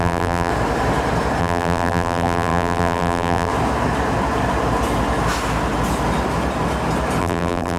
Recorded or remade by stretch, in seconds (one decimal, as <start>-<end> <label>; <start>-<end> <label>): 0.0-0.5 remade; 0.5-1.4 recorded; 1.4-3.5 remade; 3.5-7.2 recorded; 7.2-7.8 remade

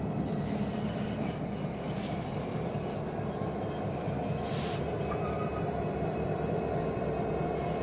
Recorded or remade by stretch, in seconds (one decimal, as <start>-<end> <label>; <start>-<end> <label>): 0.0-1.8 recorded; 1.8-2.7 remade; 2.7-6.1 recorded; 6.1-7.3 remade; 7.3-7.8 recorded

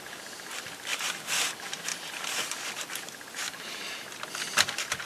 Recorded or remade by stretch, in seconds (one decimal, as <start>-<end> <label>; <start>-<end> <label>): 0.0-5.1 recorded

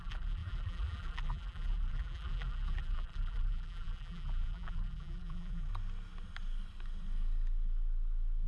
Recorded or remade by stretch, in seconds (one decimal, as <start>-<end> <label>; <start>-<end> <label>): 0.0-5.7 remade; 5.7-8.5 recorded